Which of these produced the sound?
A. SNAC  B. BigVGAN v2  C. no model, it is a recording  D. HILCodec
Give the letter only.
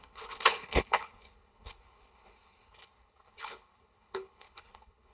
D